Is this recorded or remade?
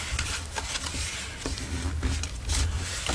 recorded